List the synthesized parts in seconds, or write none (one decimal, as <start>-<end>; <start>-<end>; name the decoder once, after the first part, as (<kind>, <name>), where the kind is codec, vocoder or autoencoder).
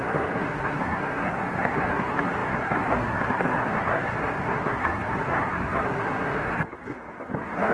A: 0.0-7.7 (codec, SNAC)